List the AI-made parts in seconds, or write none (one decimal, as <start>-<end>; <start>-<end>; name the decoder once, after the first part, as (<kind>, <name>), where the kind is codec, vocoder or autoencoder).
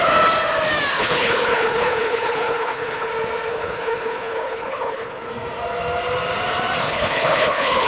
0.9-3.1 (codec, HILCodec); 3.5-5.3; 6.8-7.9